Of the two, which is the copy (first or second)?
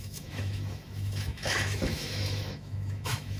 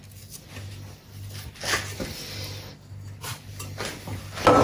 first